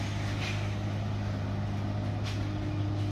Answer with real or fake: real